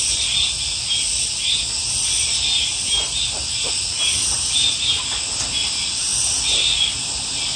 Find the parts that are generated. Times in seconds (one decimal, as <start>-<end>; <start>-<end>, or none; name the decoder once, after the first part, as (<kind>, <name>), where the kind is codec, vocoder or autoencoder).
none